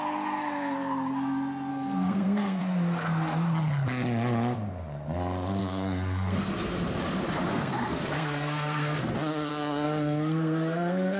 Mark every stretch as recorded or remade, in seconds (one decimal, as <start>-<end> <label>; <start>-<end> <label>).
0.0-1.7 recorded; 1.7-2.6 remade; 2.6-5.6 recorded; 5.6-6.4 remade; 6.4-7.5 recorded; 7.5-9.0 remade; 9.0-9.5 recorded; 9.5-11.2 remade